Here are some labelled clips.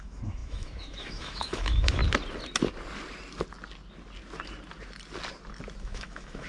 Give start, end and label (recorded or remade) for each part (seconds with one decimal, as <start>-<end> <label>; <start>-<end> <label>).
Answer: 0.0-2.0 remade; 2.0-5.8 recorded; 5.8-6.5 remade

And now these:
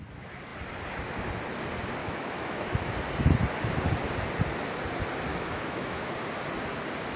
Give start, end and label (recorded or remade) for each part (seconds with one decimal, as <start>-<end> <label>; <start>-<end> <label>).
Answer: 0.0-2.0 recorded; 2.0-2.9 remade; 2.9-5.3 recorded; 5.3-6.1 remade; 6.1-7.2 recorded

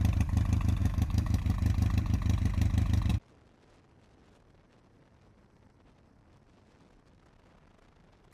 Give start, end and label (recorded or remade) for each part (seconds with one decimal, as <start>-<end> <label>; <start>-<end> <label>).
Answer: 0.0-0.8 recorded; 0.8-1.4 remade; 1.4-8.3 recorded

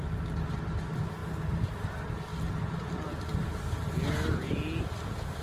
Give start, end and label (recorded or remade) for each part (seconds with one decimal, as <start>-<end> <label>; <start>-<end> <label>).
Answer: 0.0-5.4 recorded

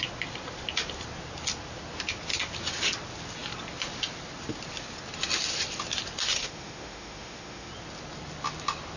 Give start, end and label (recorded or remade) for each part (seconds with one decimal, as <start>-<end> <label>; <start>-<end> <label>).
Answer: 0.0-6.4 recorded; 6.4-7.7 remade; 7.7-9.0 recorded